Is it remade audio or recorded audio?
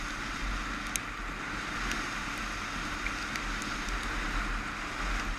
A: recorded